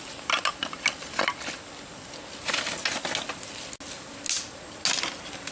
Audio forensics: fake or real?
real